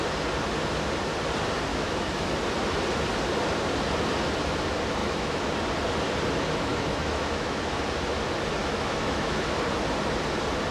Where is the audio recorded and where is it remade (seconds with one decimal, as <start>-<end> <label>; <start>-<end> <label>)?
0.0-1.7 recorded; 1.7-2.3 remade; 2.3-5.0 recorded; 5.0-5.5 remade; 5.5-6.7 recorded; 6.7-7.6 remade; 7.6-8.6 recorded; 8.6-9.4 remade; 9.4-10.7 recorded